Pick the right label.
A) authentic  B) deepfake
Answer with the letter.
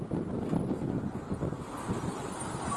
A